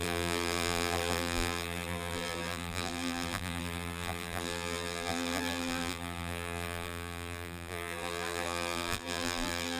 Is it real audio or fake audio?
fake